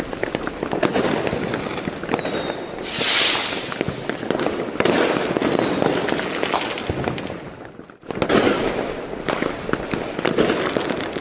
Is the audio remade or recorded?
recorded